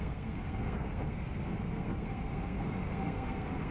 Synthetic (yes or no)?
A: yes